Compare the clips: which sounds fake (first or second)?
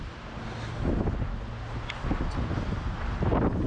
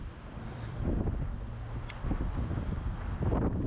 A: second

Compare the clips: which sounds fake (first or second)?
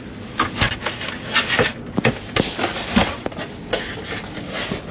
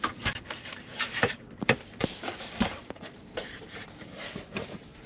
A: second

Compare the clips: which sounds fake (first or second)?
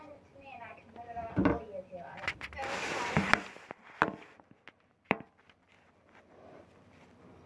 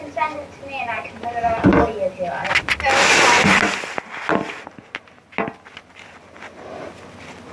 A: first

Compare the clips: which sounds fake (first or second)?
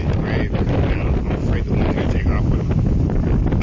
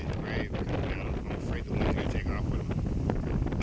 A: first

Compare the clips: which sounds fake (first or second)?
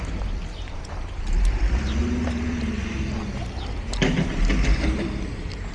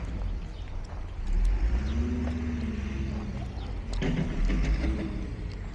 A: first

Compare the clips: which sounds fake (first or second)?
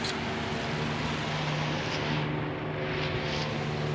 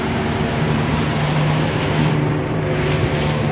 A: second